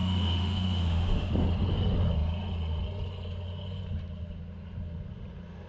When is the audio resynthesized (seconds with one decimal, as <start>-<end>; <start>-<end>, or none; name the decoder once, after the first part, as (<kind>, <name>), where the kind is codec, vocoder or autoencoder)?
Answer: 0.0-1.3 (autoencoder, DAC-VAE)